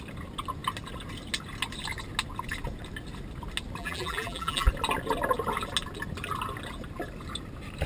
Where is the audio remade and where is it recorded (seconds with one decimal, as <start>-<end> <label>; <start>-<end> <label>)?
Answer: 0.0-3.8 recorded; 3.8-4.7 remade; 4.7-7.9 recorded